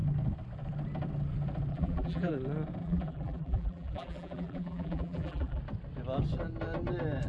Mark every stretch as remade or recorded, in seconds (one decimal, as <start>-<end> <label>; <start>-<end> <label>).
0.0-1.7 recorded; 1.7-2.3 remade; 2.3-2.8 recorded; 2.8-5.6 remade; 5.6-7.3 recorded

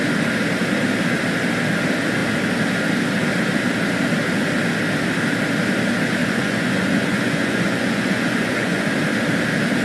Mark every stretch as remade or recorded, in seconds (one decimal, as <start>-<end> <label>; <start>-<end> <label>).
0.0-6.2 recorded; 6.2-8.9 remade; 8.9-9.8 recorded

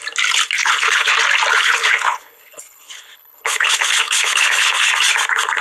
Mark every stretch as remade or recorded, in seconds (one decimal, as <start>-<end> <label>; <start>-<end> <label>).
0.0-0.6 recorded; 0.6-1.1 remade; 1.1-1.5 recorded; 1.5-4.9 remade; 4.9-5.6 recorded

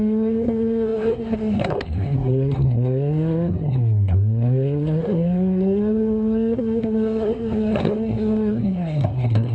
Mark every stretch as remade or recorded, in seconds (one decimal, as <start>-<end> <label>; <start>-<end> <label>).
0.0-9.5 remade

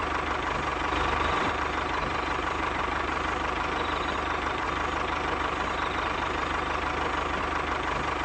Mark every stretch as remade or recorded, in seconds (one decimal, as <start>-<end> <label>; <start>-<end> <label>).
0.0-0.7 recorded; 0.7-1.6 remade; 1.6-2.0 recorded; 2.0-6.9 remade; 6.9-8.2 recorded

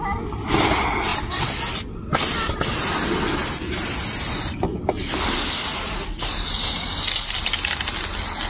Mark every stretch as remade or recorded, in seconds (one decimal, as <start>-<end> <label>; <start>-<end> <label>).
0.0-8.5 recorded

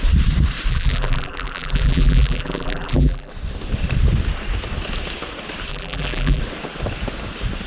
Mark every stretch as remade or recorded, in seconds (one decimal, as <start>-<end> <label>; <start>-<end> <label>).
0.0-0.7 recorded; 0.7-3.3 remade; 3.3-5.7 recorded; 5.7-6.4 remade; 6.4-7.7 recorded

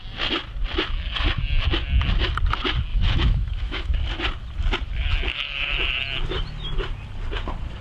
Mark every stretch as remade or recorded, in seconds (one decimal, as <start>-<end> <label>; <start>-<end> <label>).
0.0-2.9 recorded; 2.9-3.9 remade; 3.9-7.8 recorded